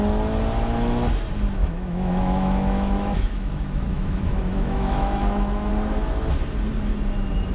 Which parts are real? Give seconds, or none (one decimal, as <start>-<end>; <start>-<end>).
0.0-1.6; 5.7-7.5